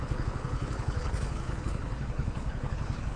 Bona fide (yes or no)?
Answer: no